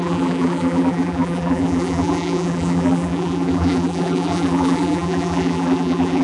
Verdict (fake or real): fake